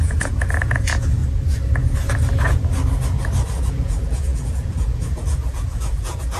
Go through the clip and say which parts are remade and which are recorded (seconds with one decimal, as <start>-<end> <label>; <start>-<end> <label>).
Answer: 0.0-1.2 remade; 1.2-3.7 recorded; 3.7-6.4 remade